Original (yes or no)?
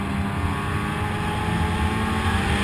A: yes